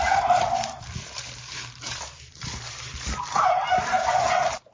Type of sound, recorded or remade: remade